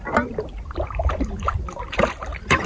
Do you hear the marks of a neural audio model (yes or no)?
yes